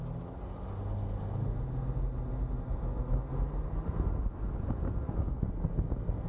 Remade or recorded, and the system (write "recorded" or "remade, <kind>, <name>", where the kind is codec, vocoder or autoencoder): recorded